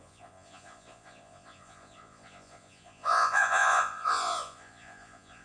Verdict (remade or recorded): remade